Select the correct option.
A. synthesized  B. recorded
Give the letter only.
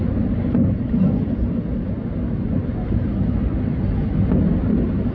B